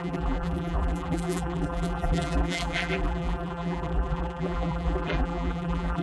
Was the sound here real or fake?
fake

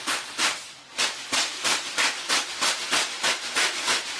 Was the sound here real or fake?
real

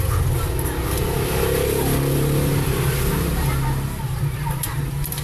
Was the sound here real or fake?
real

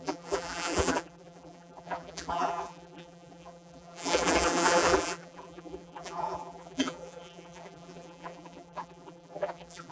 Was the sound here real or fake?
fake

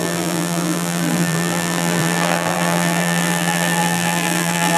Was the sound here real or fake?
fake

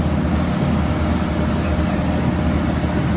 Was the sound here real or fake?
real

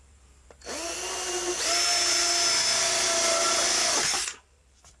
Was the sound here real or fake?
real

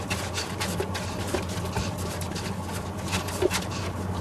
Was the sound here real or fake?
fake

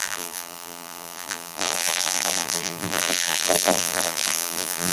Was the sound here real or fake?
fake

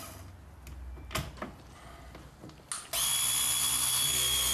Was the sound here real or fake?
real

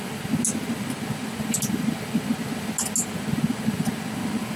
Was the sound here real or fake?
real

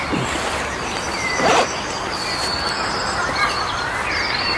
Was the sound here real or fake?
fake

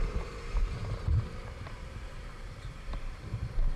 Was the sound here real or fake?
fake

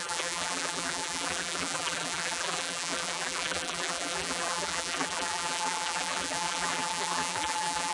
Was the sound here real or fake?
fake